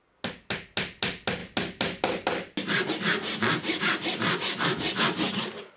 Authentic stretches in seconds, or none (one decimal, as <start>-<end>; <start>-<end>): 0.0-5.8